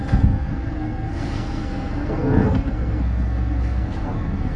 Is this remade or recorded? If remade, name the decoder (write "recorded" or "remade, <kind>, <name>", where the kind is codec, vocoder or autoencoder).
remade, codec, SNAC